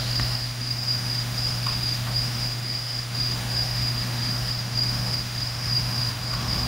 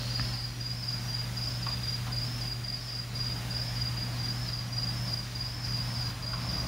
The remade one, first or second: first